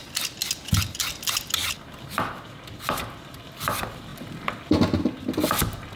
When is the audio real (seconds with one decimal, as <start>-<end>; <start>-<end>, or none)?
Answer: 0.0-6.0